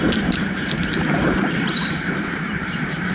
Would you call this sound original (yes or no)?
no